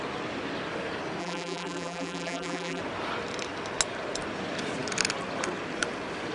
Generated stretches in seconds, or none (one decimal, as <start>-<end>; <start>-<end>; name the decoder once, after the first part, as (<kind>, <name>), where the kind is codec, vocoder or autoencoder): 1.2-2.8 (vocoder, BigVGAN v2)